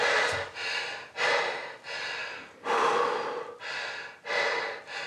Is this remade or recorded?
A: recorded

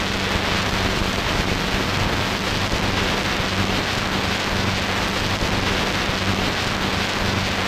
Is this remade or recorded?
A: recorded